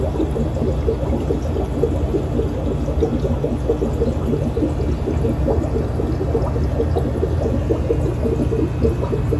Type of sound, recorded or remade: recorded